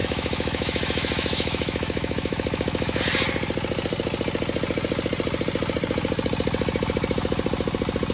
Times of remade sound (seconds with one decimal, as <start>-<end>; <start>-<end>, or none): 0.0-3.0